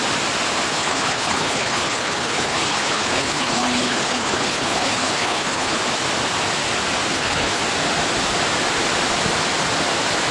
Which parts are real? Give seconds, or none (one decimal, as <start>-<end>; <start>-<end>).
0.0-0.7; 5.8-7.1; 7.6-10.3